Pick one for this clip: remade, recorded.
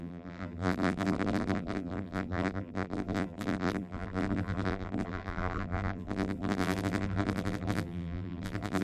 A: remade